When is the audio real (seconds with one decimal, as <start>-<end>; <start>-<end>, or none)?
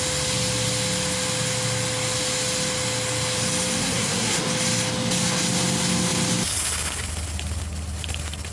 0.0-3.8; 4.4-8.5